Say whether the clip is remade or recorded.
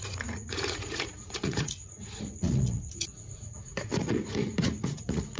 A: remade